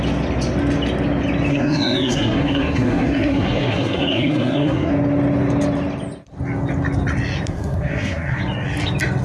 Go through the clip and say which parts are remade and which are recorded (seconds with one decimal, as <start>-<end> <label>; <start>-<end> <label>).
0.0-1.5 recorded; 1.5-4.9 remade; 4.9-7.5 recorded; 7.5-8.4 remade; 8.4-9.2 recorded